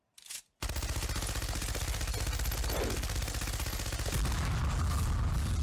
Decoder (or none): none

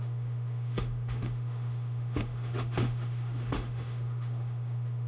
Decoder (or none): autoencoder, DAC-VAE